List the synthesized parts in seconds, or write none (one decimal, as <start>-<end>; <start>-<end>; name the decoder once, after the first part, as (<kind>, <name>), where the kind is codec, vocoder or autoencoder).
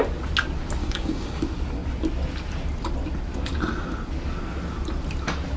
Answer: 0.8-1.4 (codec, DAC)